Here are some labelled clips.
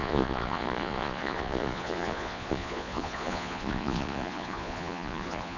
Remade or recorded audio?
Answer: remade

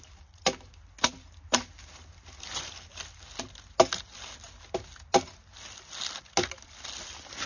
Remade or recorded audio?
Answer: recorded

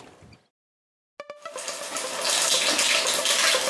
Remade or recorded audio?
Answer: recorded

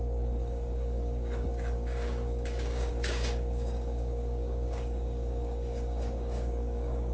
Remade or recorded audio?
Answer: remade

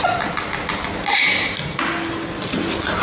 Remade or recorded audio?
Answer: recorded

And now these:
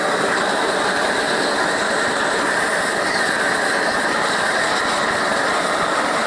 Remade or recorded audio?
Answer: recorded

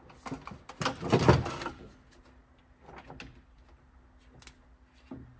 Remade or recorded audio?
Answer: recorded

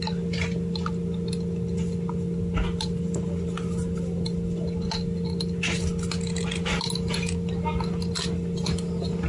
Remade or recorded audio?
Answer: recorded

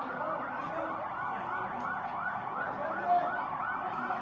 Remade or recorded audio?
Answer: recorded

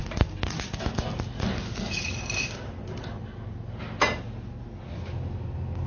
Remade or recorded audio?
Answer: recorded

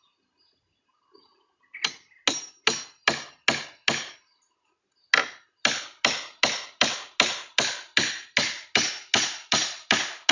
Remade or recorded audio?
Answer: recorded